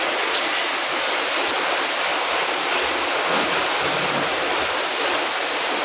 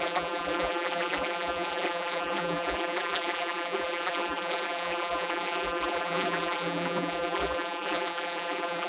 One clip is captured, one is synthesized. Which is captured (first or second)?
first